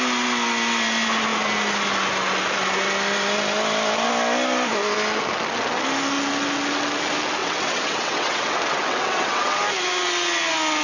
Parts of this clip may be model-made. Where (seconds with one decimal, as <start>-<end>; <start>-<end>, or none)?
7.4-9.6